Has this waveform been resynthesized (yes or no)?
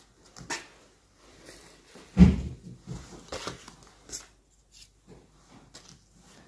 no